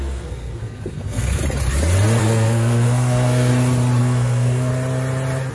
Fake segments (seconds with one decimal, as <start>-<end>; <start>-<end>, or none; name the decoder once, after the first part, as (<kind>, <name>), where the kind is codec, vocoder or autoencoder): 0.0-1.4 (codec, SNAC); 2.2-3.5; 4.0-4.7